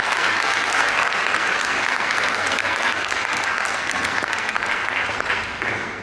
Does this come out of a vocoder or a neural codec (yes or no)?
yes